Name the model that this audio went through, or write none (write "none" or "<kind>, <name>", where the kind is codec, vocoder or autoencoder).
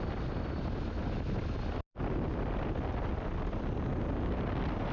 none